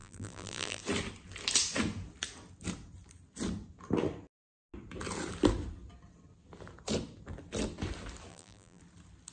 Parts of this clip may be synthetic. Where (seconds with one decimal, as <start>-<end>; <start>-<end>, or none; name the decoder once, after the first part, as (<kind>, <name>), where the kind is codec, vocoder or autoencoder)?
0.0-0.8 (vocoder, BigVGAN v2); 8.3-8.8